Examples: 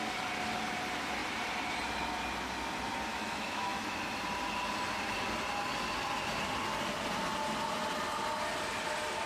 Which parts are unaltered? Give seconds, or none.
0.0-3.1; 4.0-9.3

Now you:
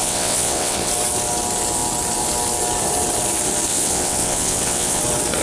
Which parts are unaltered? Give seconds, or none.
0.9-3.7; 5.0-5.4

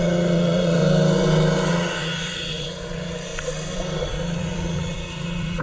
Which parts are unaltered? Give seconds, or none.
0.8-1.7; 3.3-4.0

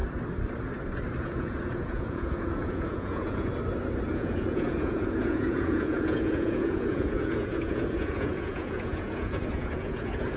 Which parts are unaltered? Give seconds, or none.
0.0-1.2; 3.5-4.1

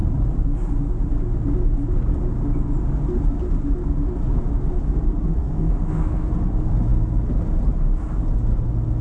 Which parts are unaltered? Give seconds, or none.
0.0-5.4; 6.3-9.0

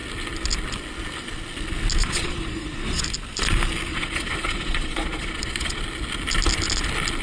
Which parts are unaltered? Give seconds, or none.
0.0-2.0; 3.0-3.9; 5.8-7.2

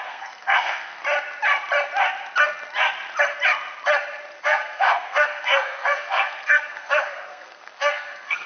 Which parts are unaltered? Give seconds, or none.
1.0-4.4